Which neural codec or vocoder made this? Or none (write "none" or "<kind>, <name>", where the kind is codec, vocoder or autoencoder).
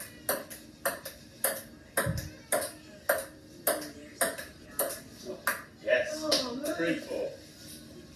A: none